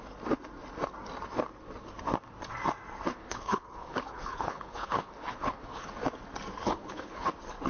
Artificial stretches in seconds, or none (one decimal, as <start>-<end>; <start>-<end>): 3.1-5.9; 6.6-7.3

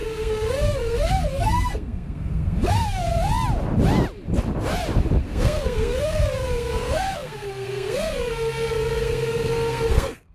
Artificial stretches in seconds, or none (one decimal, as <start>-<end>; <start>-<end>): 0.0-3.3; 5.2-10.3